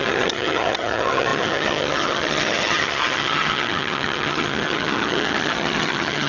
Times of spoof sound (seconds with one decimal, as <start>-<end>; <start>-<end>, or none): 0.0-6.3